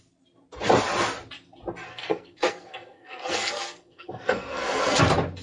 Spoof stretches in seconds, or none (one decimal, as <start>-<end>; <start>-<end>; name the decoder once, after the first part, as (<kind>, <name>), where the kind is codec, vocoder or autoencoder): 1.8-5.0 (codec, SNAC)